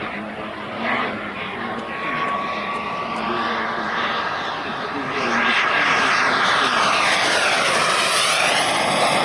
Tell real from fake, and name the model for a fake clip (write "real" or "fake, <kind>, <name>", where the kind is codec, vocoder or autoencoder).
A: real